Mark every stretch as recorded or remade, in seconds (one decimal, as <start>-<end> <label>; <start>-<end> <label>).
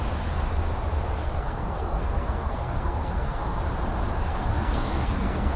0.0-1.2 recorded; 1.2-3.6 remade; 3.6-4.2 recorded; 4.2-5.6 remade